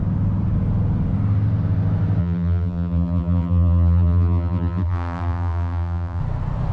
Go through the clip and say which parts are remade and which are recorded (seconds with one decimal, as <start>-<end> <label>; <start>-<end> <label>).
0.0-2.2 recorded; 2.2-6.2 remade; 6.2-6.7 recorded